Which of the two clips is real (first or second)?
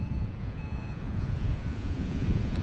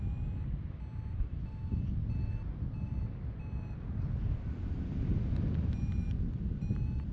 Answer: second